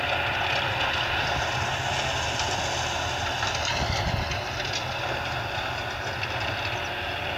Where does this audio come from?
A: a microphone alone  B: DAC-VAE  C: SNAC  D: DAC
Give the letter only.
A